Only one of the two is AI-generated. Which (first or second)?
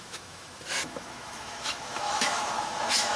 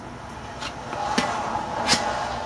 first